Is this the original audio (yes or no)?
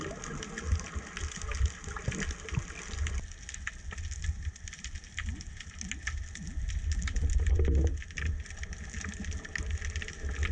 yes